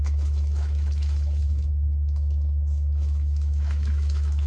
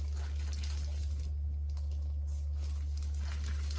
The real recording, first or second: second